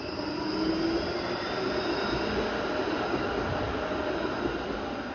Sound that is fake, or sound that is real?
real